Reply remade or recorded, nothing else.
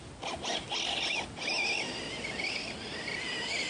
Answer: recorded